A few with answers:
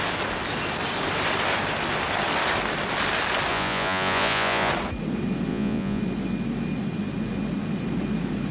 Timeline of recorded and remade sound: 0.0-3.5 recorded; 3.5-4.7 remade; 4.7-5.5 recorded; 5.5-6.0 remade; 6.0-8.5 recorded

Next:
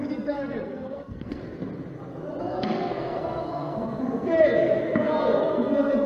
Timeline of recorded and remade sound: 0.0-1.4 remade; 1.4-2.4 recorded; 2.4-6.1 remade

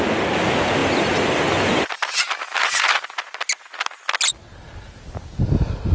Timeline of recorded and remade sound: 0.0-5.9 recorded

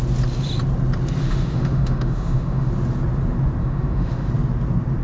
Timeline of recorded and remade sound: 0.0-1.2 recorded; 1.2-2.7 remade; 2.7-3.6 recorded; 3.6-4.3 remade; 4.3-5.0 recorded

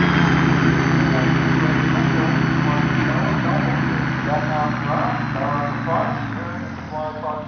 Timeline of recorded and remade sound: 0.0-3.0 recorded; 3.0-3.8 remade; 3.8-7.5 recorded

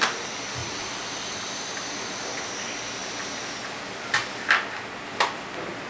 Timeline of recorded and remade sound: 0.0-5.9 recorded

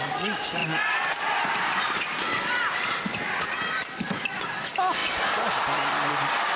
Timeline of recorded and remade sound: 0.0-0.6 remade; 0.6-3.5 recorded; 3.5-6.6 remade